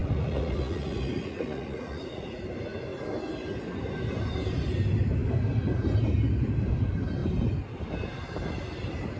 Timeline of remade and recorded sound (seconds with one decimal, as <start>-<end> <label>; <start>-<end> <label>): 0.0-2.4 remade; 2.4-9.2 recorded